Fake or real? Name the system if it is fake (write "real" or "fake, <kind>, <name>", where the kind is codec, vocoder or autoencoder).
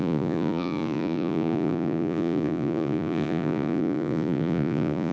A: fake, vocoder, Vocos